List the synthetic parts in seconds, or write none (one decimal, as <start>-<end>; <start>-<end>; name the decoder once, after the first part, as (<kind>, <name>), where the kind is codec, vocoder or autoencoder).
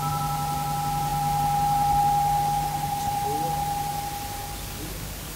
4.4-5.4 (codec, DAC)